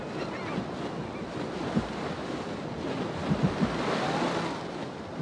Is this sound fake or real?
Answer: real